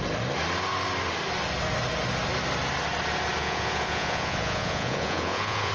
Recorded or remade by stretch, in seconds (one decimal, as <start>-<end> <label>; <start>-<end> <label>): 0.0-3.4 recorded; 3.4-5.7 remade